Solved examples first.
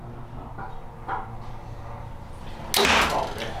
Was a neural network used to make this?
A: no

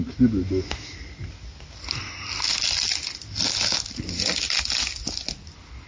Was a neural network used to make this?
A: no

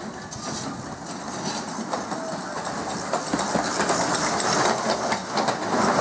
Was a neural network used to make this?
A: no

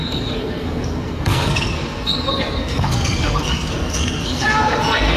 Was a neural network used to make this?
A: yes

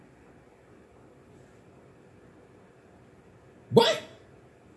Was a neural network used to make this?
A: no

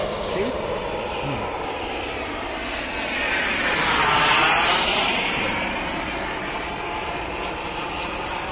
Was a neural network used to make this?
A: no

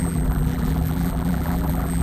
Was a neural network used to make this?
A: yes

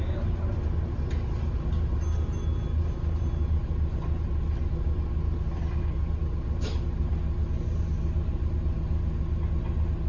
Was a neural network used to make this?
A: no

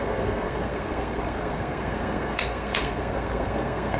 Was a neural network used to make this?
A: yes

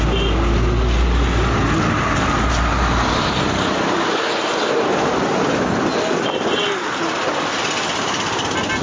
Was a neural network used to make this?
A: no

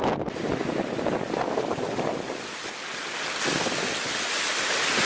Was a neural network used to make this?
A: no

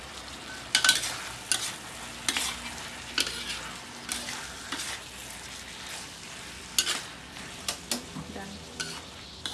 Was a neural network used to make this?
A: no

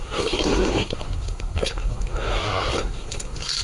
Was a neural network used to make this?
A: yes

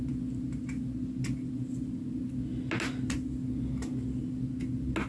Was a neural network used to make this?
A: no